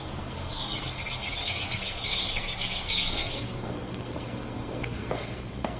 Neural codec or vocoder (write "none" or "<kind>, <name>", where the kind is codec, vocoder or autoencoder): codec, SNAC